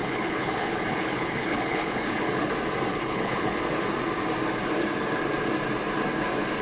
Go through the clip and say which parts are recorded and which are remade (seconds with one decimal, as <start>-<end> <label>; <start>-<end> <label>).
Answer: 0.0-2.5 remade; 2.5-2.9 recorded; 2.9-3.6 remade; 3.6-6.6 recorded

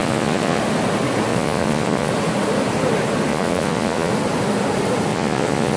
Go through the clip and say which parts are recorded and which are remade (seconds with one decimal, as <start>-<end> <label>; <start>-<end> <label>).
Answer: 0.0-0.6 remade; 0.6-1.3 recorded; 1.3-2.1 remade; 2.1-3.3 recorded; 3.3-4.1 remade; 4.1-5.1 recorded; 5.1-5.8 remade

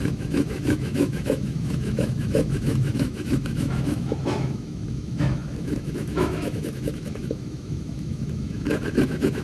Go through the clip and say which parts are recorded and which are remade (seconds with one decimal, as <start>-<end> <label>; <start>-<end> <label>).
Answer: 0.0-9.4 remade

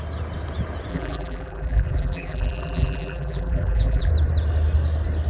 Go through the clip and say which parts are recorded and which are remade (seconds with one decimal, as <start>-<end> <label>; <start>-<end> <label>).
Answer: 0.0-0.9 recorded; 0.9-4.1 remade; 4.1-5.3 recorded